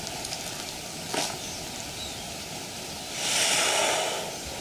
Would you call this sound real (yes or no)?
yes